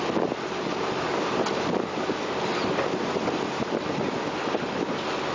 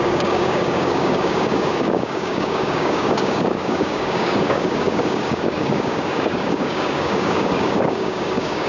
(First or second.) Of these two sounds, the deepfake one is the second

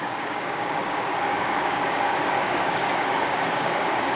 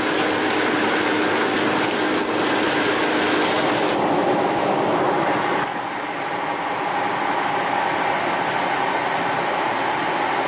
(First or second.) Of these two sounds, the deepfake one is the first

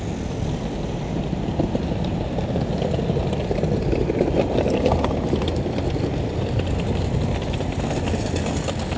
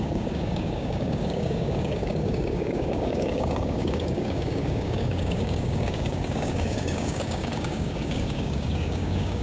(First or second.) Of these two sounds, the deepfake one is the second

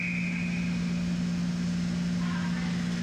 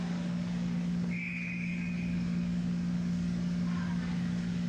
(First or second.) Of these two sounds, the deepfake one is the second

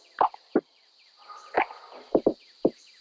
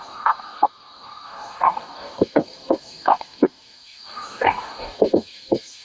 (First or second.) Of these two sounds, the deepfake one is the second